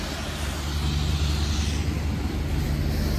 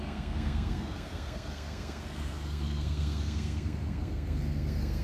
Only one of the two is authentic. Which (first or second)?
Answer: first